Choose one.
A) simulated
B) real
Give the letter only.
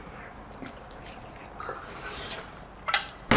B